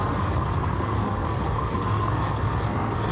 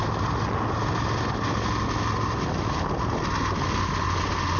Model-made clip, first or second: first